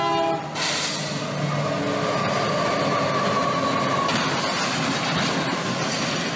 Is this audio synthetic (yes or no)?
no